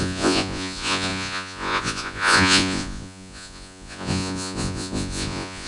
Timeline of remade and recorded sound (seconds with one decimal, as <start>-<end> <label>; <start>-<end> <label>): 0.0-5.7 remade